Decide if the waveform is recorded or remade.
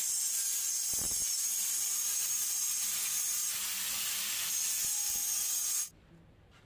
recorded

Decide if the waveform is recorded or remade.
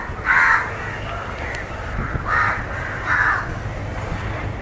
recorded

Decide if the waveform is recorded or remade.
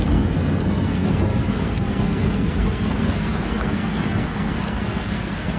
remade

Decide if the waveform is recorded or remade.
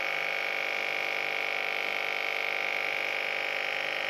recorded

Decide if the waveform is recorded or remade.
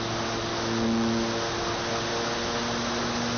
recorded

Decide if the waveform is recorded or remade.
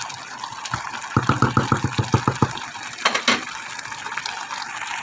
recorded